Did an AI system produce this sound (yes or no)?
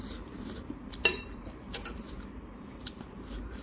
yes